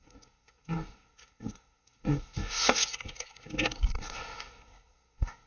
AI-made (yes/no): yes